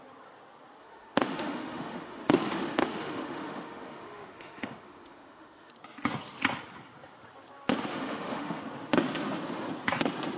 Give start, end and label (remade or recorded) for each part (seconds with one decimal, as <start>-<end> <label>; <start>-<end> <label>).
0.0-0.8 recorded; 0.8-5.7 remade; 5.7-7.9 recorded; 7.9-8.6 remade; 8.6-10.4 recorded